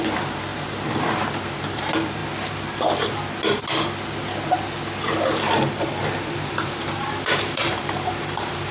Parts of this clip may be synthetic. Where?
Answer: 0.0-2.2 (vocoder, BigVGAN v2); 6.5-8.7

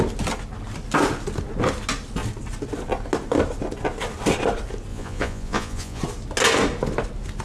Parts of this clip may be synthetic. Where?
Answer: 4.9-6.0 (vocoder, Vocos)